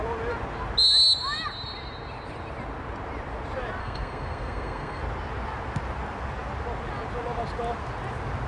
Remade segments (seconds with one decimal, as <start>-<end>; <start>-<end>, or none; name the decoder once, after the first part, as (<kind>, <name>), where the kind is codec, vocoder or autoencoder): 3.8-5.0 (codec, SNAC)